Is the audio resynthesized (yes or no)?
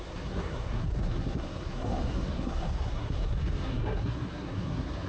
yes